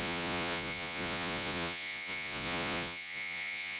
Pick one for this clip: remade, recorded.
remade